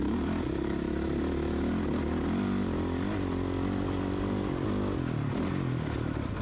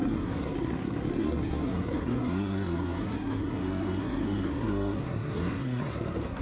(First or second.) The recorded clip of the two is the first